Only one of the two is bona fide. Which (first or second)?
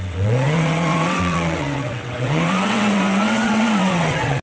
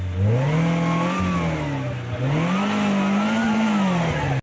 second